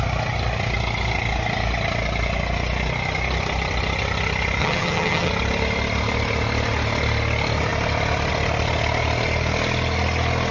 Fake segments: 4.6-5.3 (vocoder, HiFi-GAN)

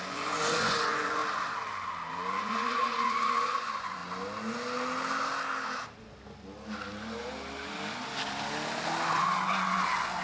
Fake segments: 0.0-1.2 (vocoder, Vocos); 2.1-4.0; 9.1-10.2

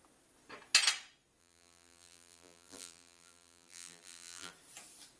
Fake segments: 1.4-4.5 (vocoder, BigVGAN v2)

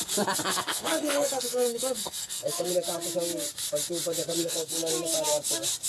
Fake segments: 0.5-2.7 (codec, SNAC); 4.4-4.9

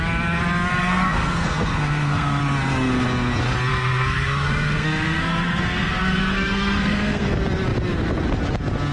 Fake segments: 0.7-2.4 (codec, SNAC); 3.7-7.3

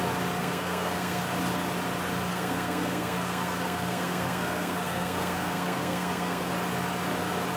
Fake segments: 0.4-1.2 (codec, SNAC); 2.3-6.5

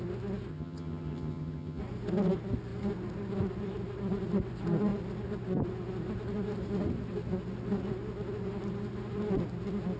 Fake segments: 0.5-1.8 (vocoder, HiFi-GAN)

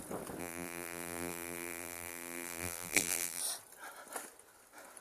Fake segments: 0.4-3.4 (vocoder, BigVGAN v2)